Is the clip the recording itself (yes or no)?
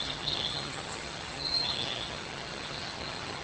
no